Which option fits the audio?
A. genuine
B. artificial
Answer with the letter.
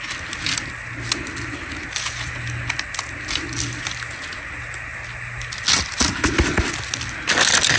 A